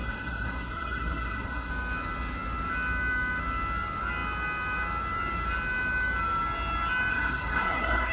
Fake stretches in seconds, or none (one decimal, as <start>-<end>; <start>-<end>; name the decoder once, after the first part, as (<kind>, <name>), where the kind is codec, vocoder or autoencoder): 0.0-1.7 (codec, SNAC); 7.1-8.1